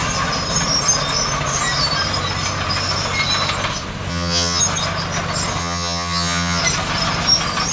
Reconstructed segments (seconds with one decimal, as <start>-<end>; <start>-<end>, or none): 4.1-4.6; 5.6-6.6